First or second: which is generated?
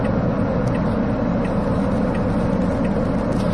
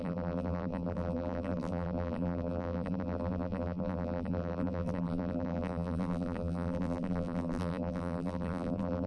second